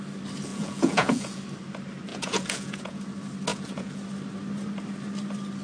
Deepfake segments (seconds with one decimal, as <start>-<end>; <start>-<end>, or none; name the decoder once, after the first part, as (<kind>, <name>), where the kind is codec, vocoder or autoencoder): 0.5-1.4 (vocoder, Vocos); 2.1-3.0; 3.5-4.0